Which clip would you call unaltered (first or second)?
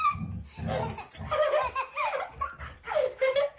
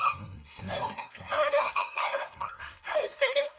first